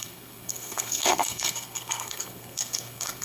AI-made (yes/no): yes